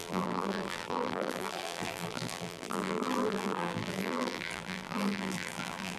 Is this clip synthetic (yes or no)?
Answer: yes